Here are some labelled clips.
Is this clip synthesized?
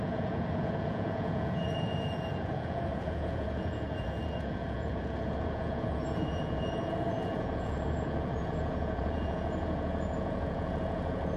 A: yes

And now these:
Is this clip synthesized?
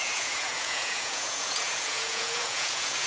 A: yes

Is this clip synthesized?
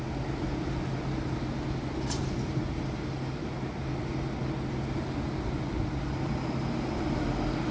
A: no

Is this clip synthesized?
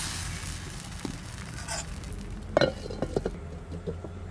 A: no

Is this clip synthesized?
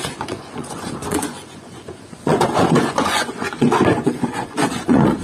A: yes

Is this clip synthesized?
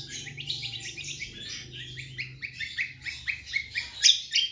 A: no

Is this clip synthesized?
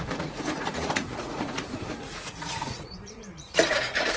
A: yes